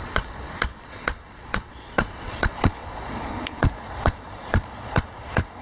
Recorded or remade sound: remade